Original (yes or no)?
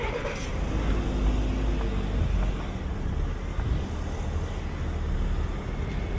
yes